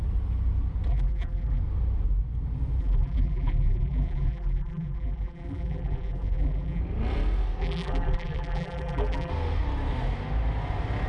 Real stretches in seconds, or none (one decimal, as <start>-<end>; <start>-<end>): 0.0-0.9; 1.6-2.8; 6.8-7.6; 9.3-11.1